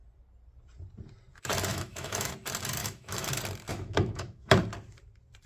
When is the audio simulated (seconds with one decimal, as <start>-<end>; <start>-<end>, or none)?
1.7-2.3; 2.8-3.3; 3.7-4.5